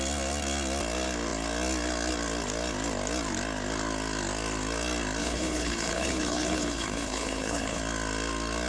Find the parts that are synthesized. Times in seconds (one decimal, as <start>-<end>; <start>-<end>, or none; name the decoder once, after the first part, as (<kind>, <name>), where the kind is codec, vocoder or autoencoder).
5.2-7.8 (codec, HILCodec)